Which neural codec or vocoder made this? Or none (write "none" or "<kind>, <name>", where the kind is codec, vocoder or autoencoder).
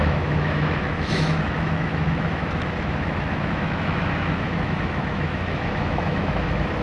autoencoder, DAC-VAE